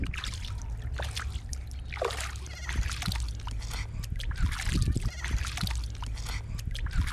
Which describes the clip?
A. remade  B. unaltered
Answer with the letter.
B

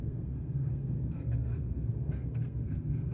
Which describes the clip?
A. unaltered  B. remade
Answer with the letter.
B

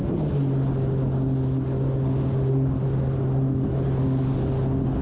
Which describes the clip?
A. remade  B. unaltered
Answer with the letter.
B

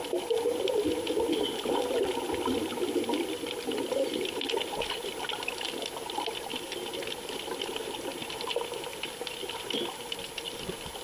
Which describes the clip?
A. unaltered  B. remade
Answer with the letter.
A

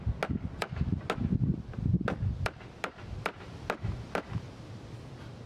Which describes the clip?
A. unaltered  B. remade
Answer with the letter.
A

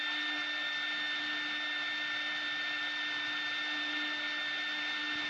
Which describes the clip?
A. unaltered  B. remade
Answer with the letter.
A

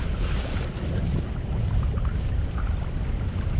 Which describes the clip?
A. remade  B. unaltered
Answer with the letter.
B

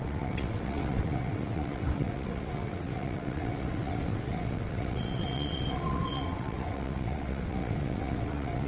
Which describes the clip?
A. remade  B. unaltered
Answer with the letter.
A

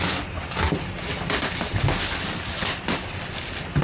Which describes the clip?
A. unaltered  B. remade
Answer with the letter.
A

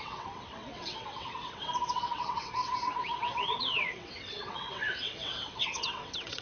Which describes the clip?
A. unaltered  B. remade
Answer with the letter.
B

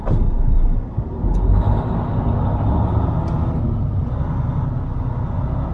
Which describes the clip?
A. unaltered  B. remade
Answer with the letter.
A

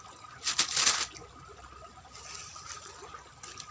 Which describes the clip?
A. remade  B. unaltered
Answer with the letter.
A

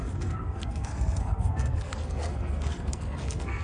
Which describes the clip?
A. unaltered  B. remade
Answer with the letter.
B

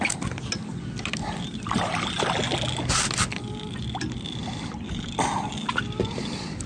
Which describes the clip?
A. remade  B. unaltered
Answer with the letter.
B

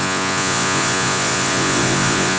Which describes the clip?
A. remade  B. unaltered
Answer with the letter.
A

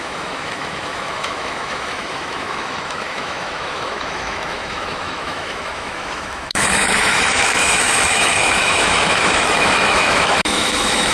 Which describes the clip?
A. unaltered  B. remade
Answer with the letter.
B